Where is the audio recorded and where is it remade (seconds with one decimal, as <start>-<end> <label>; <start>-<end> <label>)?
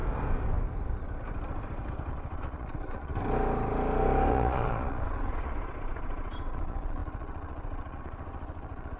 0.0-2.1 recorded; 2.1-3.1 remade; 3.1-4.3 recorded; 4.3-9.0 remade